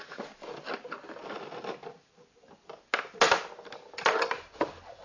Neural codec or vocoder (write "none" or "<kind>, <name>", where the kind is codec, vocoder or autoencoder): none